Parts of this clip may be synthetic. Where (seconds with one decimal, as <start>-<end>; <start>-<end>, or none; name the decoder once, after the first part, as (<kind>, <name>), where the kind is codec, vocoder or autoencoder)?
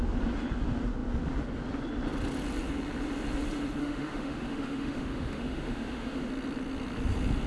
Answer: 3.8-6.3 (autoencoder, DAC-VAE)